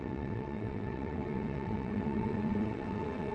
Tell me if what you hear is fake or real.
fake